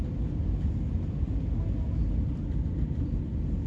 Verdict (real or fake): real